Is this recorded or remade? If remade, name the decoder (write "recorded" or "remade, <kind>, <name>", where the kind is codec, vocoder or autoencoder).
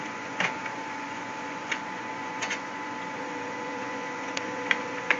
remade, vocoder, Vocos